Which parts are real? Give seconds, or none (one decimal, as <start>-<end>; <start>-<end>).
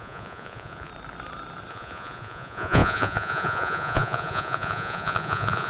0.9-1.7